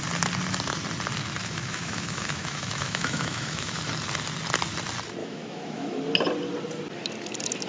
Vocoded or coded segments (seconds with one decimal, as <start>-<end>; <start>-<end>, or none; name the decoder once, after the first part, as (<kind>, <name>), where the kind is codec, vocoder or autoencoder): 1.4-3.8 (autoencoder, DAC-VAE); 5.2-6.0

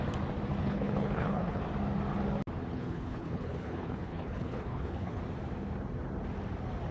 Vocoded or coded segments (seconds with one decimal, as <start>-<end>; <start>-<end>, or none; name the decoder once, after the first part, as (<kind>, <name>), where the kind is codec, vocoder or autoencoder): 0.6-1.6 (codec, HILCodec); 2.7-5.2

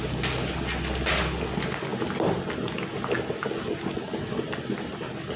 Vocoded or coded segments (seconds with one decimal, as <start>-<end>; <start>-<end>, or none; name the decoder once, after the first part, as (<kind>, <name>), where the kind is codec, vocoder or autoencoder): none

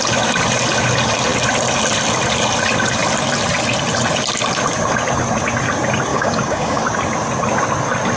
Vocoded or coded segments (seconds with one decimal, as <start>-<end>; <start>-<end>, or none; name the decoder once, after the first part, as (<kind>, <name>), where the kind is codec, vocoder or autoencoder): 6.1-6.8 (codec, DAC)